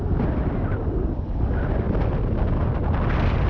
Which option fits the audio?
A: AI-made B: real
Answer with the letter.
B